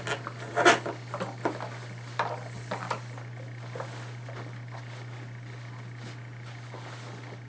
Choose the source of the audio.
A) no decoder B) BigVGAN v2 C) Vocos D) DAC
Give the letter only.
A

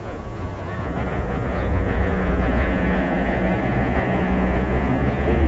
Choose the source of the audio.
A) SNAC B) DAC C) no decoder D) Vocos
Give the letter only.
D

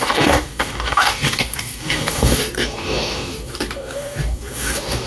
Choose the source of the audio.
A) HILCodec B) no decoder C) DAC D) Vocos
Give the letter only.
C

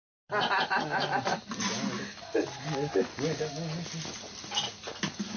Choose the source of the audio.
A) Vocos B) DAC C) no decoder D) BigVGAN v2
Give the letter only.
C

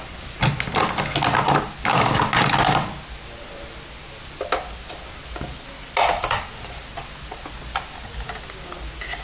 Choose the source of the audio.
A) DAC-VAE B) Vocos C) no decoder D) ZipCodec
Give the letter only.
C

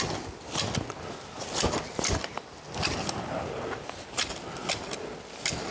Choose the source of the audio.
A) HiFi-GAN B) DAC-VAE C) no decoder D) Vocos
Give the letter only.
C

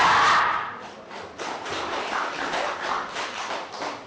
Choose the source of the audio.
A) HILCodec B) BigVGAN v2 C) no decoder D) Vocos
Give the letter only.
B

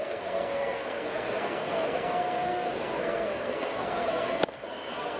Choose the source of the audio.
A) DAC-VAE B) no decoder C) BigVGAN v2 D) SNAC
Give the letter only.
D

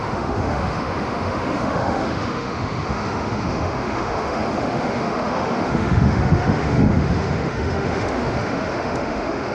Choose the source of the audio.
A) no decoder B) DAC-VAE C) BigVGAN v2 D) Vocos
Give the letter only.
B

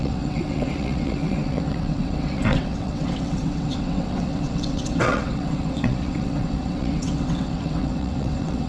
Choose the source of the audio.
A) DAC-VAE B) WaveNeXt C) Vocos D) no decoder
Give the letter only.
B